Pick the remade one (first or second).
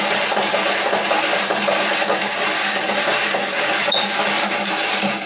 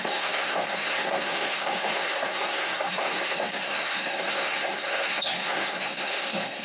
second